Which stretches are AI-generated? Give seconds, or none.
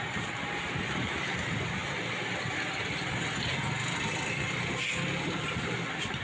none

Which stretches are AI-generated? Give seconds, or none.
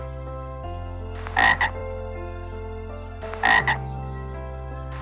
none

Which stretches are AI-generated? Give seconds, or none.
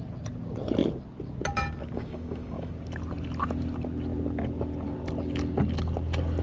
1.8-2.7 (codec, DAC)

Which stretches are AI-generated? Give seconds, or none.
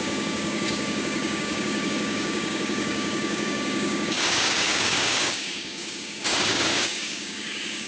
0.0-7.9 (codec, DAC)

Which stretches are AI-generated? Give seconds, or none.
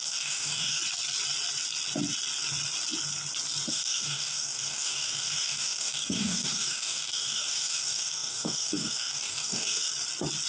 0.0-0.8 (codec, DAC); 3.7-9.9